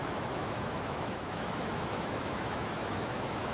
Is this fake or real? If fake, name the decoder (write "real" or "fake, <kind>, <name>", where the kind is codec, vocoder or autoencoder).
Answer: fake, autoencoder, DAC-VAE